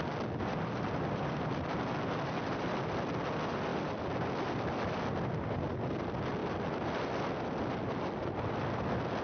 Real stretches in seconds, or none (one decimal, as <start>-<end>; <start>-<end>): 0.0-9.2

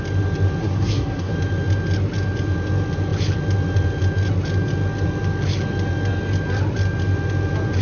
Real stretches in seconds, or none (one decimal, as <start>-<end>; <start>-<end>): 0.0-0.6; 1.3-7.8

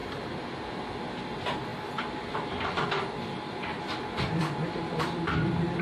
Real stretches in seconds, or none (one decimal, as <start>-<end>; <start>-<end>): none

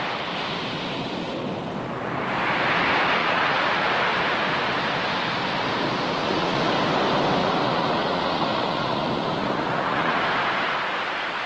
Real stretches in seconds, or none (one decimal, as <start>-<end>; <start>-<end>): 0.0-3.2; 3.9-6.2; 6.7-7.4; 10.3-11.5